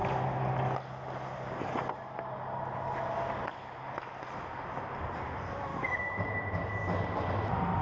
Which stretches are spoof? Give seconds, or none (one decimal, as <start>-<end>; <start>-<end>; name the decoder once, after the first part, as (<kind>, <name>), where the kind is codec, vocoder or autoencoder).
5.7-6.3 (autoencoder, DAC-VAE)